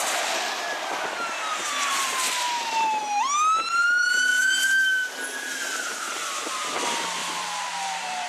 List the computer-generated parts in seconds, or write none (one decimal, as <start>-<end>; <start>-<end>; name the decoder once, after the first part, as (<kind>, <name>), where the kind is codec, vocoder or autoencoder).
1.5-3.0 (vocoder, BigVGAN v2); 7.2-8.3

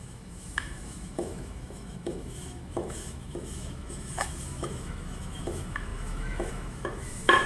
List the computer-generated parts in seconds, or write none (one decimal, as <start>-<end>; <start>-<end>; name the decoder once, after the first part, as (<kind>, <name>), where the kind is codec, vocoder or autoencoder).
0.0-7.5 (autoencoder, DAC-VAE)

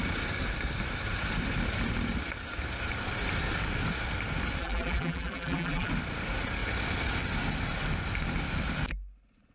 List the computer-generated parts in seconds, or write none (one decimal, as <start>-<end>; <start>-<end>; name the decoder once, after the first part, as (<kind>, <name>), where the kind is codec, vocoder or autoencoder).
4.6-5.9 (vocoder, BigVGAN v2)

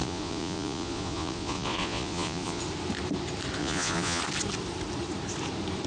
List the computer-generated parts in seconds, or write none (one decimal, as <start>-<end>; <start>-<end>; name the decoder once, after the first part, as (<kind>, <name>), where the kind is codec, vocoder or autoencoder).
0.0-2.6 (vocoder, Vocos); 3.6-4.2

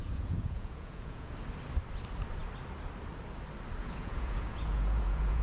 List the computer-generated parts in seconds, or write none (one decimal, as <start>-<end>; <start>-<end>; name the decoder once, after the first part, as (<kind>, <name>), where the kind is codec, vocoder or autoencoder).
0.0-1.3 (vocoder, Vocos); 3.8-5.4

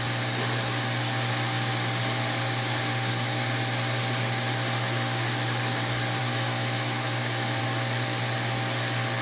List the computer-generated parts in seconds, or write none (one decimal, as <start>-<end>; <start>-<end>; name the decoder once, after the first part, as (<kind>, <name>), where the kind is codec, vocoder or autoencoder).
6.2-7.6 (autoencoder, DAC-VAE)

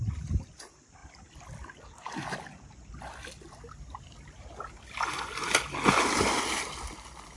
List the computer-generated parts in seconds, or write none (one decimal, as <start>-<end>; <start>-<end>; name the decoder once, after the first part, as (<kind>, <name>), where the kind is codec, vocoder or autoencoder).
none

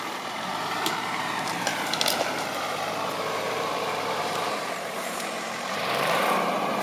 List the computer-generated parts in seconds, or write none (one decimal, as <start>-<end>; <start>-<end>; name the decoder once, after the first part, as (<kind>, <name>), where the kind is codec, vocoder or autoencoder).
0.0-1.7 (vocoder, BigVGAN v2); 3.3-6.8